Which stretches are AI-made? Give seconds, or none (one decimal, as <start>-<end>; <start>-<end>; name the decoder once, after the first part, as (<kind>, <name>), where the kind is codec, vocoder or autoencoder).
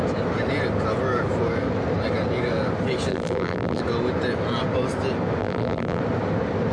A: 3.1-3.8 (vocoder, BigVGAN v2); 5.4-6.0